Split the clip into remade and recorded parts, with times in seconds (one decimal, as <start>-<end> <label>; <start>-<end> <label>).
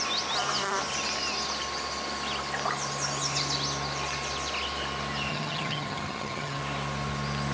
0.0-5.3 recorded; 5.3-6.6 remade; 6.6-7.5 recorded